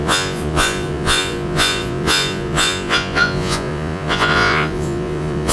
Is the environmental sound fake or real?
fake